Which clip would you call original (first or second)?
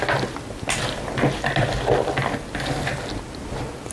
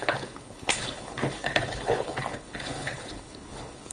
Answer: first